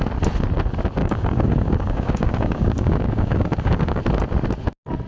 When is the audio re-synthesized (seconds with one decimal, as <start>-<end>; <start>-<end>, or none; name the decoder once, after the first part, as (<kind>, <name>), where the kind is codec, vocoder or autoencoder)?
1.0-4.0 (codec, DAC)